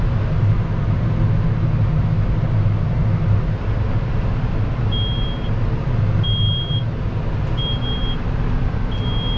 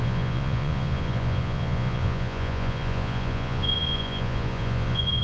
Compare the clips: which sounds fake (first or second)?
second